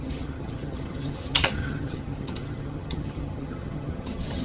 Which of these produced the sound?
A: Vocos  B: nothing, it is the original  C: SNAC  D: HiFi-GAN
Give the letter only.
D